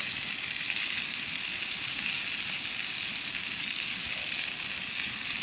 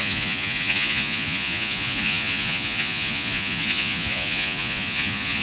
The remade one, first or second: second